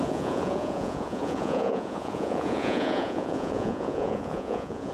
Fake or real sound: fake